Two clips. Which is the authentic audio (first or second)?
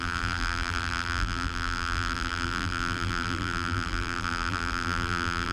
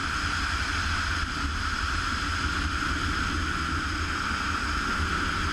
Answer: second